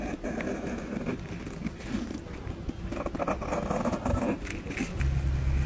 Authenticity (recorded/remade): recorded